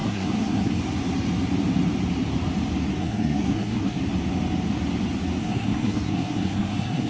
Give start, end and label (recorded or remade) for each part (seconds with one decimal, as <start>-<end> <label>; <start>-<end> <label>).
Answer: 0.0-0.8 remade; 0.8-3.0 recorded; 3.0-4.0 remade; 4.0-5.4 recorded; 5.4-7.1 remade